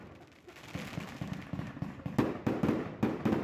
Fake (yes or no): no